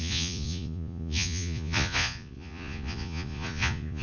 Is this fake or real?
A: fake